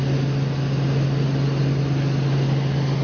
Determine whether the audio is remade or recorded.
recorded